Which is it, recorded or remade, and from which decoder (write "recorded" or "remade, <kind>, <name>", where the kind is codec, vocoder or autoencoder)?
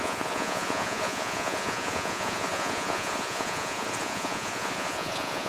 remade, vocoder, Vocos